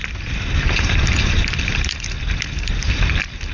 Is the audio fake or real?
real